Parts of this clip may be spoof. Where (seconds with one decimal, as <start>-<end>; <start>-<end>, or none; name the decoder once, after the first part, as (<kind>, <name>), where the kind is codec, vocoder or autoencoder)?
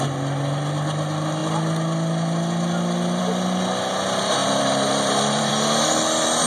4.4-5.5 (vocoder, BigVGAN v2)